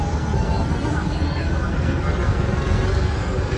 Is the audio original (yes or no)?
no